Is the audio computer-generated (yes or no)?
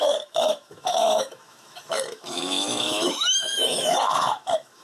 yes